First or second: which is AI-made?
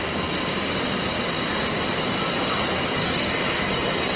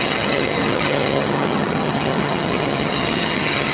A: second